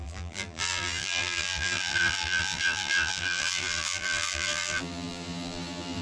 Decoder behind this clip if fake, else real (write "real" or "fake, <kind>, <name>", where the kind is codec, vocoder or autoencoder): fake, vocoder, BigVGAN v2